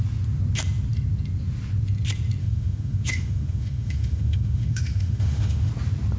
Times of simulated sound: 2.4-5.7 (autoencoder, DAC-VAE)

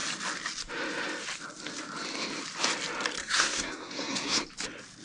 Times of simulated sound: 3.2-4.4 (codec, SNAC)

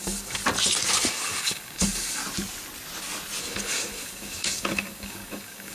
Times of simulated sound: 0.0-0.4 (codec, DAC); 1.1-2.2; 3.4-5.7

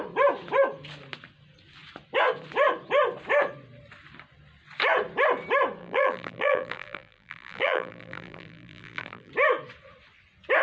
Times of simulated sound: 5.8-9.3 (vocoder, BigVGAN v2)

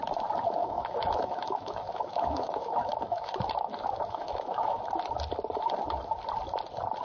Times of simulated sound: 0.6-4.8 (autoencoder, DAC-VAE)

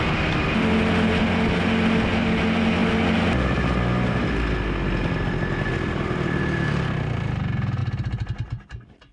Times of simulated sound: none